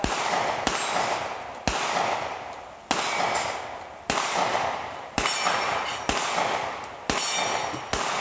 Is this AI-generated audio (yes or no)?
no